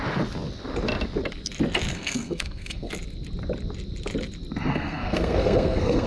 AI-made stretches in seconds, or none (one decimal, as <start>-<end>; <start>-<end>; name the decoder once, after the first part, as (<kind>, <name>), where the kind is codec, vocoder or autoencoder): 1.9-2.9 (codec, SNAC); 4.7-6.1